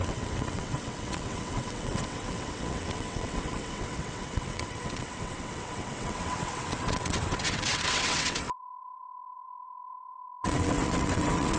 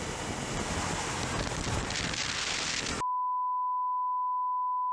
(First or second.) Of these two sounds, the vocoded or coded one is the first